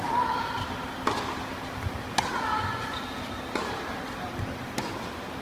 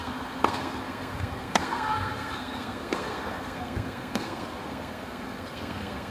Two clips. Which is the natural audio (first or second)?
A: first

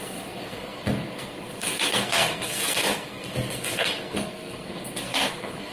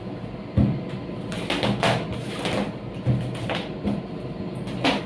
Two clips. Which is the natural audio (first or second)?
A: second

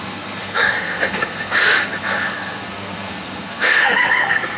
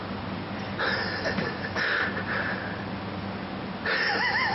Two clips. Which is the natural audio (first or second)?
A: second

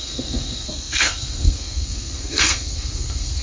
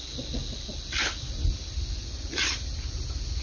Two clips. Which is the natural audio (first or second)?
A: second